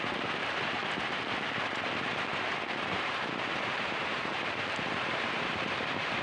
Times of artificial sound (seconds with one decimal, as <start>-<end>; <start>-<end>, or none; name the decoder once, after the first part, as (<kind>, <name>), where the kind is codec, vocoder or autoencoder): 0.0-0.8 (vocoder, BigVGAN v2); 1.7-2.3; 2.8-6.2